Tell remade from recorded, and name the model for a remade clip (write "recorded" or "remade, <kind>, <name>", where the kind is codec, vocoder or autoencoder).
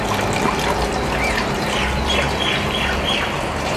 remade, vocoder, BigVGAN v2